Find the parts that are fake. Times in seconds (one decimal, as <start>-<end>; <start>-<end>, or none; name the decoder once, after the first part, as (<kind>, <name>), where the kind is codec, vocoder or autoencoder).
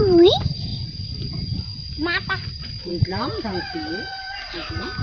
0.0-0.7 (vocoder, BigVGAN v2); 2.5-5.0